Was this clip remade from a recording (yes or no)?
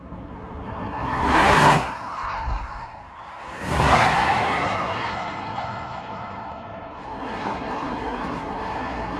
yes